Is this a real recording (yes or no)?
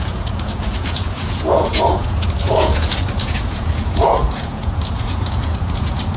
no